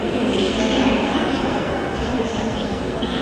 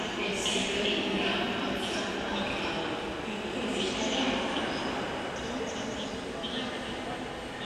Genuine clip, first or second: second